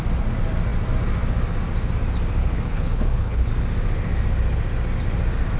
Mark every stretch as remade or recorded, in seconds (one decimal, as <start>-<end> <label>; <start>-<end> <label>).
0.0-2.4 recorded; 2.4-3.5 remade; 3.5-5.6 recorded